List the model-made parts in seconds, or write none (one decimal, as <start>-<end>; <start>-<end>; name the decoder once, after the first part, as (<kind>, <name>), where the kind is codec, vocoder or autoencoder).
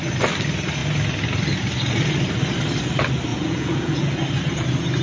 3.3-4.1 (vocoder, Vocos)